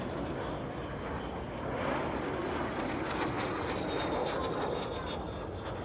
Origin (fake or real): real